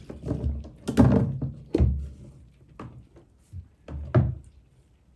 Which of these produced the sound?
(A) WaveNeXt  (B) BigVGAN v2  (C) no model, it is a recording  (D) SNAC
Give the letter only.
C